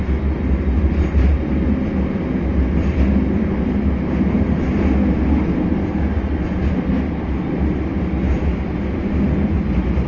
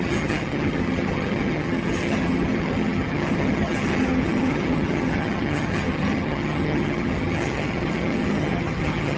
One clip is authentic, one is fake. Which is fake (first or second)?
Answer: second